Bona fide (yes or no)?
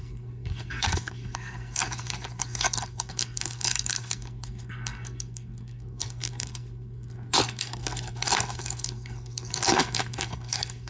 no